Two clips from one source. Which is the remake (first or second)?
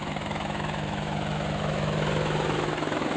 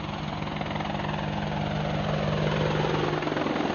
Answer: first